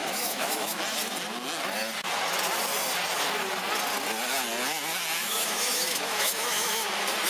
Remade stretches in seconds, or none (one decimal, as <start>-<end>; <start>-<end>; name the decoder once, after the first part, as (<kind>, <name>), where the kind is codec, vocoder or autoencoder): 0.0-0.8 (autoencoder, DAC-VAE); 5.2-6.8